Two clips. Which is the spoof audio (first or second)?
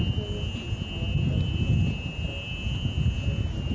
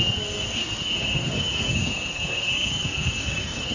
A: second